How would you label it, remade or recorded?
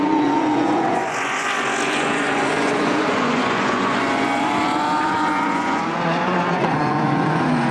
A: remade